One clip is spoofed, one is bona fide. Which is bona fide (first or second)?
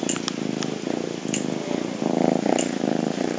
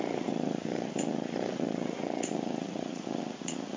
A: first